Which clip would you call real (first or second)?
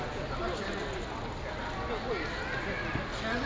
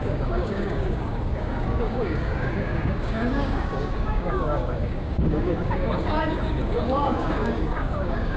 first